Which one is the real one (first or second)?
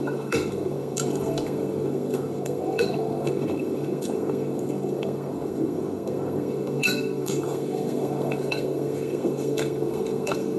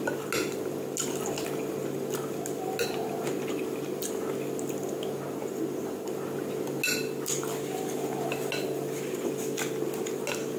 second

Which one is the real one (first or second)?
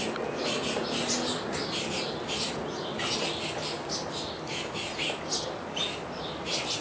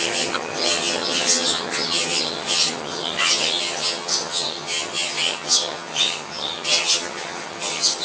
first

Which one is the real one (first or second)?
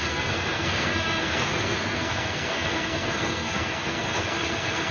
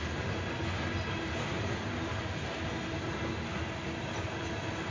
second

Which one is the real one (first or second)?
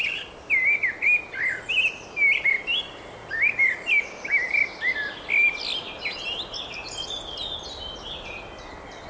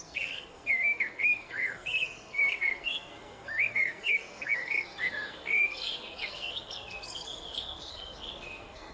first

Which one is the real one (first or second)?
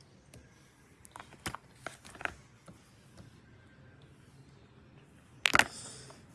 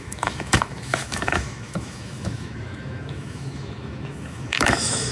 first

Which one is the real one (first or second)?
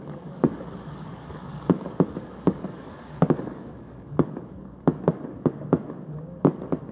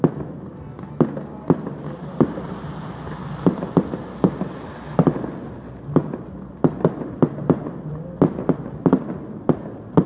second